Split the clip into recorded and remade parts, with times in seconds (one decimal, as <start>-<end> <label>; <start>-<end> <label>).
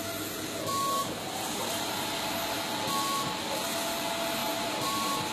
0.0-1.0 recorded; 1.0-2.1 remade; 2.1-4.4 recorded; 4.4-5.3 remade